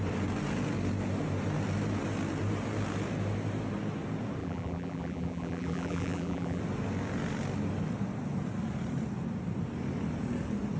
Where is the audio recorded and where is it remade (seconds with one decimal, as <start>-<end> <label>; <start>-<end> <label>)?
0.0-4.4 recorded; 4.4-6.6 remade; 6.6-10.8 recorded